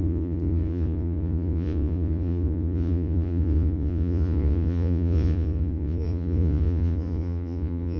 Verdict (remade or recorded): remade